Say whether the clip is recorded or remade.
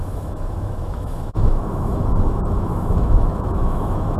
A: remade